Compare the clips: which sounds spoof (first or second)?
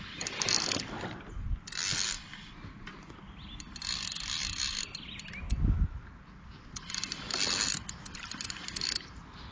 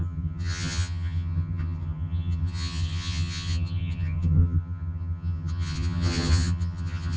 second